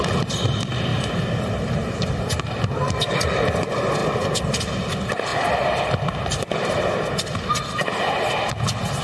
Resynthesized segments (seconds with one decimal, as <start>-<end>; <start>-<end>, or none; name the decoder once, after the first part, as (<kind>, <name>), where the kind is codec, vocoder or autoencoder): 0.9-3.4 (vocoder, BigVGAN v2); 4.0-4.6